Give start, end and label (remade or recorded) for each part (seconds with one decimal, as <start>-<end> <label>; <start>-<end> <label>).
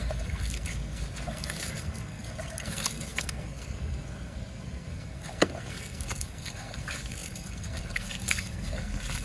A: 0.0-9.2 remade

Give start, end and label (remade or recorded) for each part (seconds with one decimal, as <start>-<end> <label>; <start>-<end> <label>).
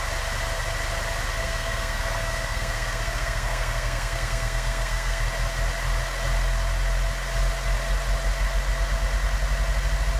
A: 0.0-1.4 recorded; 1.4-5.2 remade; 5.2-10.2 recorded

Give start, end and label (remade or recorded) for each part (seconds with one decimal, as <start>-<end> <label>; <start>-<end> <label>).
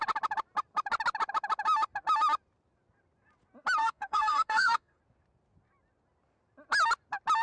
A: 0.0-3.8 recorded; 3.8-5.0 remade; 5.0-7.4 recorded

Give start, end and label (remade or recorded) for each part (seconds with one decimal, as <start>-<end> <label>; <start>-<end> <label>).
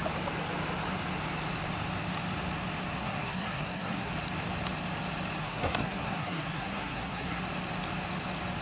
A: 0.0-3.0 recorded; 3.0-4.1 remade; 4.1-5.4 recorded; 5.4-7.4 remade; 7.4-8.6 recorded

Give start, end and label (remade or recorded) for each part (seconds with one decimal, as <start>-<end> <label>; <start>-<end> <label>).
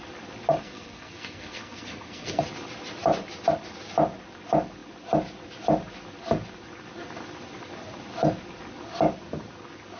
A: 0.0-0.6 recorded; 0.6-2.4 remade; 2.4-10.0 recorded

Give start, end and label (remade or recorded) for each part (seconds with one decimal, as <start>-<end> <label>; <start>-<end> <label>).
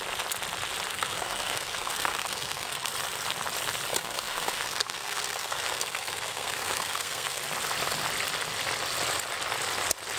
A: 0.0-0.9 recorded; 0.9-2.9 remade; 2.9-3.9 recorded; 3.9-7.4 remade; 7.4-10.2 recorded